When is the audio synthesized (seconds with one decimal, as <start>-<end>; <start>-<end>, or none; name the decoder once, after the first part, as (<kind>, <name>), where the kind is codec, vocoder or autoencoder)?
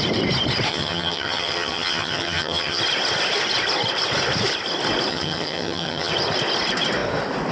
0.7-2.8 (vocoder, HiFi-GAN); 5.1-6.1